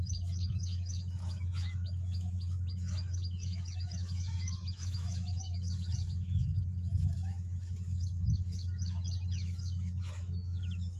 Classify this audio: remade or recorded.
remade